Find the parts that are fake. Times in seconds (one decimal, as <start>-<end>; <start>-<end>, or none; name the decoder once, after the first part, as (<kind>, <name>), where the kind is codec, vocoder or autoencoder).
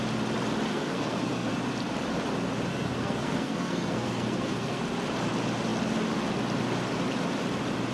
0.7-1.5 (codec, SNAC); 2.7-4.8